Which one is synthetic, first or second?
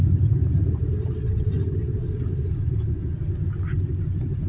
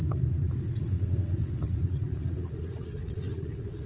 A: second